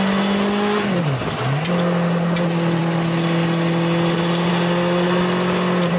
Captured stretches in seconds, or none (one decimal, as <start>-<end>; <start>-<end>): 0.0-6.0